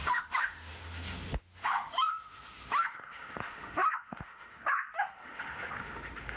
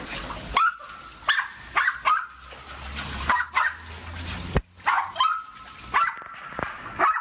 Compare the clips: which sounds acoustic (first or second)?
second